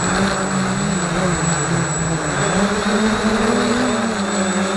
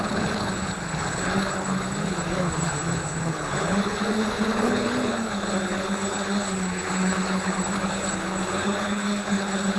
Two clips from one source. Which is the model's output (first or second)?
second